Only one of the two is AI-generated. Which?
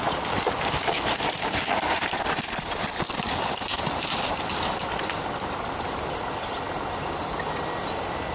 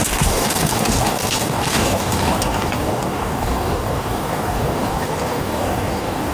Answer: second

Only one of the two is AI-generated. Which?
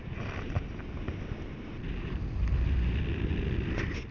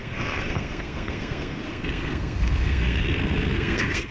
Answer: second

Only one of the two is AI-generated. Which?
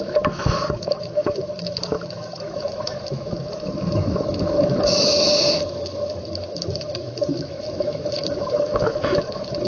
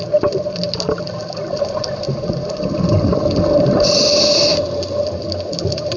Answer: first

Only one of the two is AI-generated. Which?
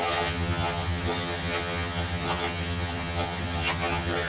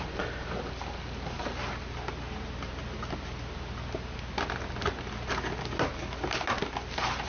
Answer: first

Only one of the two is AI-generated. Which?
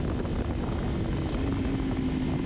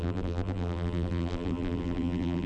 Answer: second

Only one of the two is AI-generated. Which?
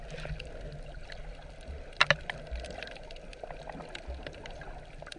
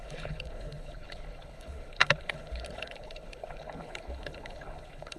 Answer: second